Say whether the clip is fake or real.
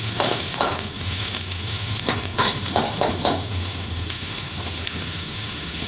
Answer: fake